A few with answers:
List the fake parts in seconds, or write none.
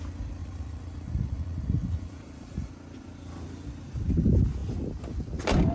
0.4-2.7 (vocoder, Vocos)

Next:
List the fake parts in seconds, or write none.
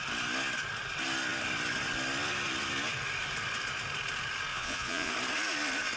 4.5-5.1 (vocoder, Vocos)